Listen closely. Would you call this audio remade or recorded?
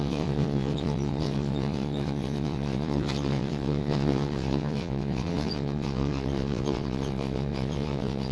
remade